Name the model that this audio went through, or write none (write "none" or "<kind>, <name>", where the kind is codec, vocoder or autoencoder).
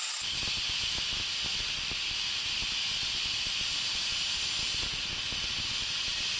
none